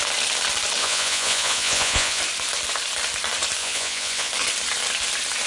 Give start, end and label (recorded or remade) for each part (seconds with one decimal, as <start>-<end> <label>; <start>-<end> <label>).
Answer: 0.0-0.8 recorded; 0.8-2.2 remade; 2.2-3.6 recorded; 3.6-4.3 remade; 4.3-5.5 recorded